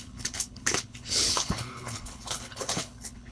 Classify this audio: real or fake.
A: fake